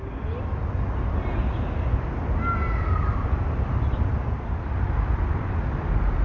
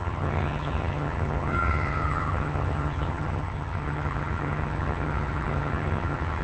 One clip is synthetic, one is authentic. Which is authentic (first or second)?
first